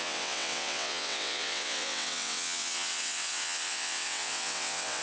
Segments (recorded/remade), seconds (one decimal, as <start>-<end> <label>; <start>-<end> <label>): 0.0-5.0 remade